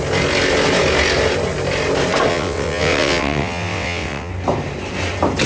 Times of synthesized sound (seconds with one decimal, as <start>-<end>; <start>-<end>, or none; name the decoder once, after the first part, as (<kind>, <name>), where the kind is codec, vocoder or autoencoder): 2.3-4.3 (vocoder, WaveNeXt)